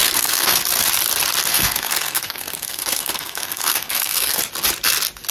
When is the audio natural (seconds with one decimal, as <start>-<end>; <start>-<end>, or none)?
0.6-1.5; 4.4-5.3